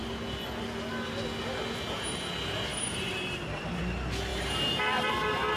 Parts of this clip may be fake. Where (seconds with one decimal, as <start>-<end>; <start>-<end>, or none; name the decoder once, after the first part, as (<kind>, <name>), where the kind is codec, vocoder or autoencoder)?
2.7-3.8 (vocoder, BigVGAN v2); 4.3-5.1